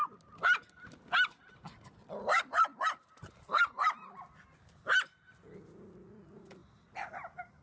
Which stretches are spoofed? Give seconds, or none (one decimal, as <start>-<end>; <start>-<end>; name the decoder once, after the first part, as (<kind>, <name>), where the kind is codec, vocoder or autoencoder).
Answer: 2.7-4.2 (vocoder, BigVGAN v2)